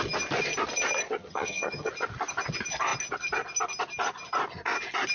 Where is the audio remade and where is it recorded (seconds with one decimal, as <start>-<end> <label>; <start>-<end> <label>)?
0.0-1.2 recorded; 1.2-1.9 remade; 1.9-5.1 recorded